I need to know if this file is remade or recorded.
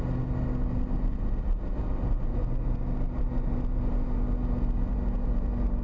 recorded